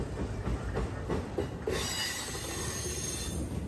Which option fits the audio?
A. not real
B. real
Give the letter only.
B